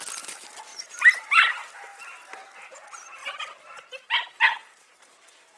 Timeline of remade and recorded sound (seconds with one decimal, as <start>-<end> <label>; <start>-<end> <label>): 0.0-5.6 recorded